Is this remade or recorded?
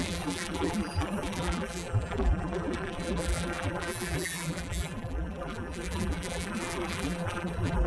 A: remade